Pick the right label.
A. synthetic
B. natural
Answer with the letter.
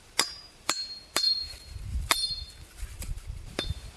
A